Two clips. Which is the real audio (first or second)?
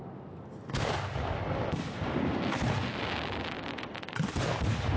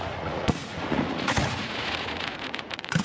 first